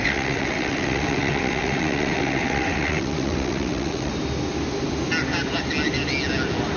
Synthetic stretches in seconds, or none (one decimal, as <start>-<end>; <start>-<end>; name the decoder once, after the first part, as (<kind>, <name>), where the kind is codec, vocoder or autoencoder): 0.0-4.1 (vocoder, WaveNeXt)